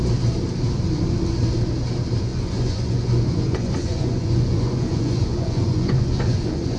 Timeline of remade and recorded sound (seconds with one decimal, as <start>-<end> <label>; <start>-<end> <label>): 0.0-2.3 recorded; 2.3-6.8 remade